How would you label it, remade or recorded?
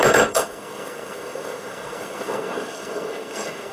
remade